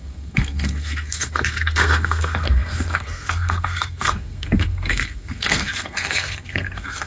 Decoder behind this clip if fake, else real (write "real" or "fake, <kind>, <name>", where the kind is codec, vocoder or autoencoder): fake, codec, SNAC